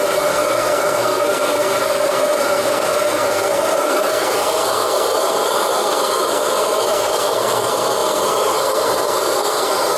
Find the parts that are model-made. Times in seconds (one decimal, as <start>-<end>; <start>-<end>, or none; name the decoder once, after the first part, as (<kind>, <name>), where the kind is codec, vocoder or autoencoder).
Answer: 0.0-10.0 (codec, SNAC)